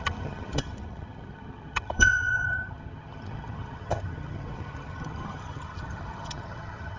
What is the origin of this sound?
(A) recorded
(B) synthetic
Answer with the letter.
B